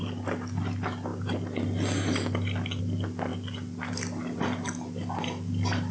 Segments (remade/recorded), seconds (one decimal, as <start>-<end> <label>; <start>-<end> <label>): 0.0-5.9 recorded